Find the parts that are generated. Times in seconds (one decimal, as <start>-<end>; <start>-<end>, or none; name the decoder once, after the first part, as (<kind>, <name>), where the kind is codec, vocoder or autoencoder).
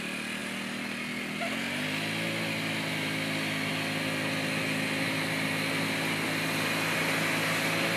none